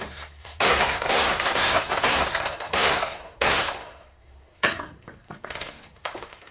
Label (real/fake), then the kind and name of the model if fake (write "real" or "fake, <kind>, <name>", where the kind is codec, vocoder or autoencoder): fake, codec, SNAC